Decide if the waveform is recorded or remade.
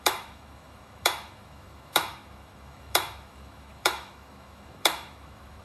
remade